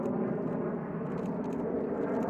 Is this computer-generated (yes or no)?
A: no